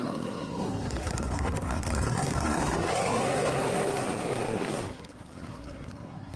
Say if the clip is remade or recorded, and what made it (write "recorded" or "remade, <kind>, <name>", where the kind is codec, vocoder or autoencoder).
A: remade, codec, SNAC